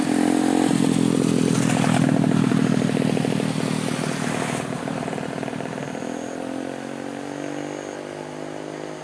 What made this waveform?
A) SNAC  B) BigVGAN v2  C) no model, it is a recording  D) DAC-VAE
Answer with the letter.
C